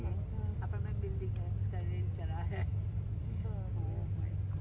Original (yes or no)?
yes